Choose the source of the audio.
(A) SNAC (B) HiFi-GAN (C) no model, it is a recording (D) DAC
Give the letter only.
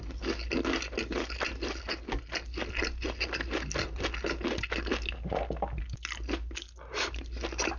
C